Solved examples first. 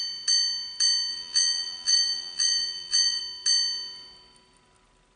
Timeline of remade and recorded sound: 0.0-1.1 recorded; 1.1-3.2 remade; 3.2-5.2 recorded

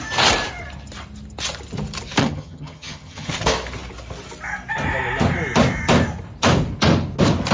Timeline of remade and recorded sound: 0.0-2.2 recorded; 2.2-3.3 remade; 3.3-7.5 recorded

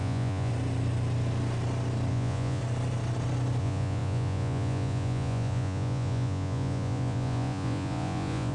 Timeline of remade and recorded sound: 0.0-0.5 remade; 0.5-2.1 recorded; 2.1-2.6 remade; 2.6-3.6 recorded; 3.6-8.5 remade

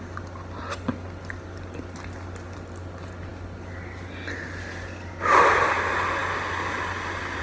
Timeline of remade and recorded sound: 0.0-7.4 recorded

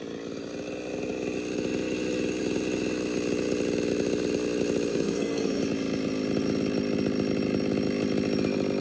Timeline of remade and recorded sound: 0.0-4.9 recorded; 4.9-5.6 remade; 5.6-8.8 recorded

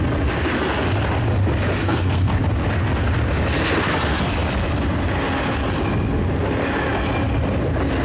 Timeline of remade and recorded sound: 0.0-1.8 recorded; 1.8-2.4 remade; 2.4-8.0 recorded

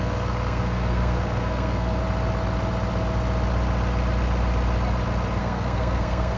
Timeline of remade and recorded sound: 0.0-2.0 remade; 2.0-5.4 recorded; 5.4-6.4 remade

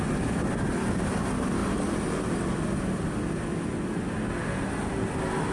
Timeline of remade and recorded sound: 0.0-5.5 recorded